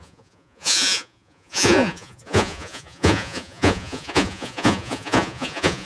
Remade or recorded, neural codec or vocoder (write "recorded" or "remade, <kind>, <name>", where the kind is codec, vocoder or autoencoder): remade, vocoder, Vocos